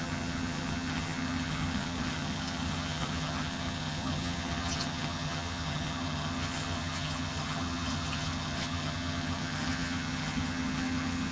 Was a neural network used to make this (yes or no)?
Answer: yes